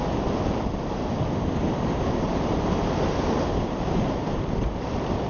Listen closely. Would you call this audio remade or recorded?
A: recorded